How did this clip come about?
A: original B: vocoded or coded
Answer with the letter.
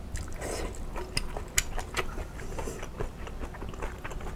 A